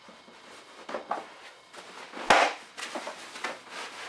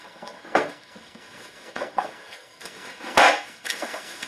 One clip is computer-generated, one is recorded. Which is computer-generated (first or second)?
second